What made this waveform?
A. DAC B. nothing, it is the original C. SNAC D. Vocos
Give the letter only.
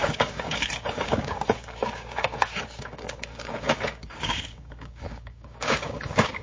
A